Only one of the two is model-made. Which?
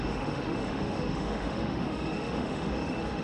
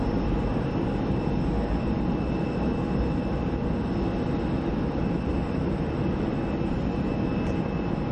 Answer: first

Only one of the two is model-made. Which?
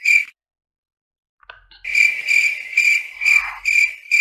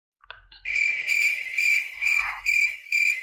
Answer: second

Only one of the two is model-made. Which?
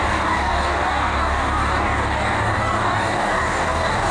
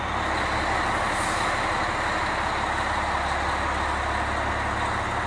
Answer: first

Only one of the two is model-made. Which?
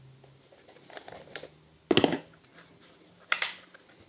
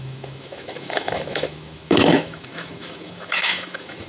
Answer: second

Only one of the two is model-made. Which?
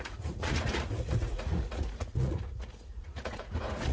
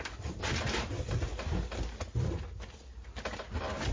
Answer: first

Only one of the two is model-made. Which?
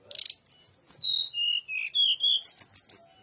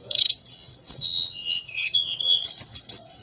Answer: second